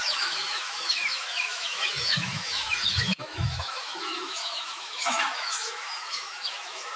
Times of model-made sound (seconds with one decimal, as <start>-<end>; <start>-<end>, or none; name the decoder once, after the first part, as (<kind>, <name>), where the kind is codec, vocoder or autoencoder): 0.0-7.0 (autoencoder, DAC-VAE)